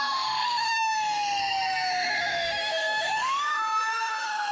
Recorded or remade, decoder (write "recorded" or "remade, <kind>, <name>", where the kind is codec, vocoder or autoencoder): remade, autoencoder, DAC-VAE